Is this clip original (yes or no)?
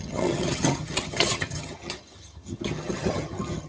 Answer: no